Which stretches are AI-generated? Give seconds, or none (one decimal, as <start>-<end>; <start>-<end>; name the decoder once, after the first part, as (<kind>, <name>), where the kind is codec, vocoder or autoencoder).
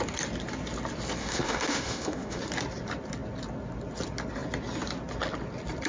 1.2-2.4 (autoencoder, DAC-VAE)